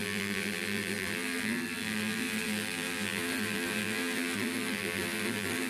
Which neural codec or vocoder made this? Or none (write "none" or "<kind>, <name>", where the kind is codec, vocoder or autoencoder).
vocoder, BigVGAN v2